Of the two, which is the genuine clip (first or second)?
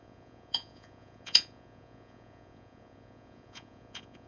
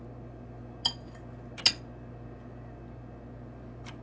second